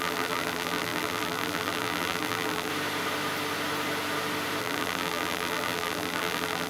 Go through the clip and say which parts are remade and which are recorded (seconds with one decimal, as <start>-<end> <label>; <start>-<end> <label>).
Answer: 0.0-2.7 remade; 2.7-4.6 recorded; 4.6-6.7 remade